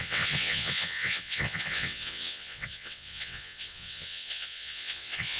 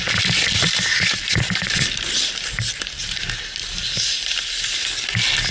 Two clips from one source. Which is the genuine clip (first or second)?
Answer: second